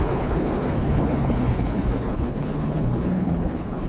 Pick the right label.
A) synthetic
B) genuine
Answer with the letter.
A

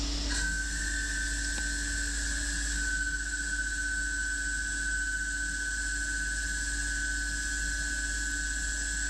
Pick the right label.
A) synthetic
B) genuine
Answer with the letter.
B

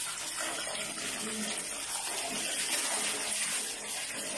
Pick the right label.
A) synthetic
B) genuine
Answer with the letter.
B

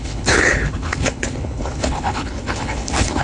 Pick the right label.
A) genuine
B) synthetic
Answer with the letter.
B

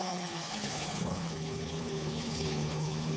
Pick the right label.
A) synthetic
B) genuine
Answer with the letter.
A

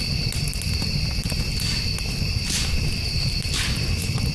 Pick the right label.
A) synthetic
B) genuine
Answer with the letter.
B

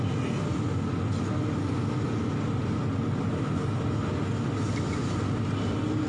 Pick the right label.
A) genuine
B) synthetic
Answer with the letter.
A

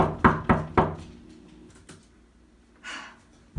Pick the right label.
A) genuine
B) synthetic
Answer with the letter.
A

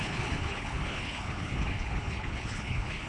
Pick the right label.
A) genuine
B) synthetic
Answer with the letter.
B